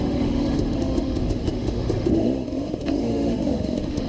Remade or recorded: remade